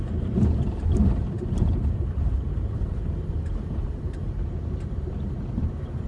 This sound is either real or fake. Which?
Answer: fake